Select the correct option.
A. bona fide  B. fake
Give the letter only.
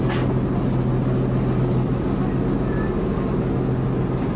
A